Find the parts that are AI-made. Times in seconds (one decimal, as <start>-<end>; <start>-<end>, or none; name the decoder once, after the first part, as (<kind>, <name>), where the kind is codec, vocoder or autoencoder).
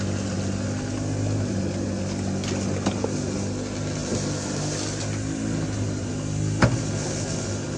none